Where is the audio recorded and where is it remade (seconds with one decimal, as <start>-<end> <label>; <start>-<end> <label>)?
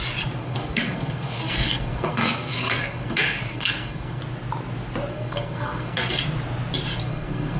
0.0-0.4 recorded; 0.4-4.2 remade; 4.2-5.1 recorded; 5.1-6.2 remade; 6.2-7.0 recorded; 7.0-7.6 remade